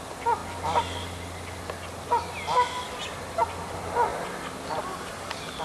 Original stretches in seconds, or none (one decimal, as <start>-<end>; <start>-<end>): 0.0-4.1